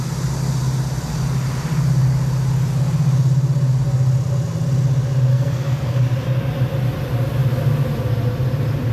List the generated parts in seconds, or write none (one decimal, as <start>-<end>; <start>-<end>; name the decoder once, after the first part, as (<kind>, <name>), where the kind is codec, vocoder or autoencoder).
5.3-6.0 (codec, SNAC)